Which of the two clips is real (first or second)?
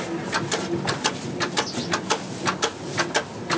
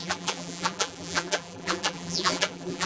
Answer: first